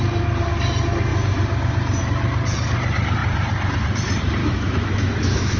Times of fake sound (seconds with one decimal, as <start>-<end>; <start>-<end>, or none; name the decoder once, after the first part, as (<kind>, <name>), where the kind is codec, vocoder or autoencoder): 4.4-5.6 (autoencoder, DAC-VAE)